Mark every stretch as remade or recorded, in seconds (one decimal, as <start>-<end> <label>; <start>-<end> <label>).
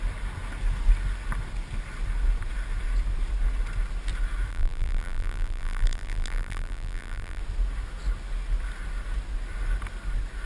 0.0-4.5 recorded; 4.5-7.4 remade; 7.4-10.5 recorded